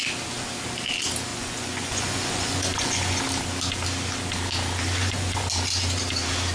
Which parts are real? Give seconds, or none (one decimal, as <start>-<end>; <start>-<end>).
0.0-1.3; 3.2-5.0; 5.5-6.5

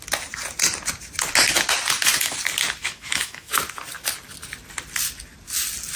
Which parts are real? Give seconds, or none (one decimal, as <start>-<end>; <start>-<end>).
0.0-2.8; 3.5-6.0

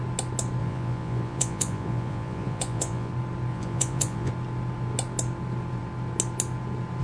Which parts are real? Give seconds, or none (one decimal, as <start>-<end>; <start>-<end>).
0.0-0.6; 3.1-3.5; 4.3-7.0